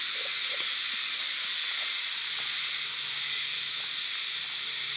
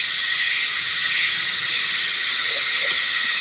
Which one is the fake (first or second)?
second